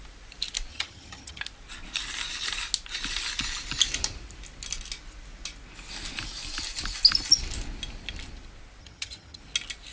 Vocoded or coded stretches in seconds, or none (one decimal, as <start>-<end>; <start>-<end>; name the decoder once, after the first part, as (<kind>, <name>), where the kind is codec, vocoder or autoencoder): 0.7-1.4 (vocoder, HiFi-GAN); 8.8-9.4